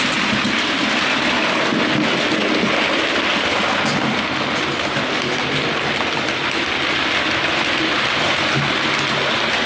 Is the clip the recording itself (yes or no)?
yes